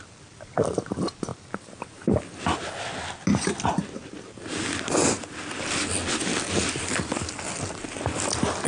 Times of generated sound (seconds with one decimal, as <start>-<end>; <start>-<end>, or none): none